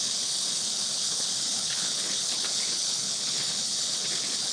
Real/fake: fake